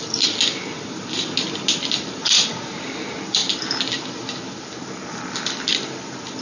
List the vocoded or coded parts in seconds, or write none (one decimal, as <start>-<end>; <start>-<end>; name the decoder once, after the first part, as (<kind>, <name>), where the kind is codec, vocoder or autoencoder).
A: 2.2-2.8 (vocoder, Vocos)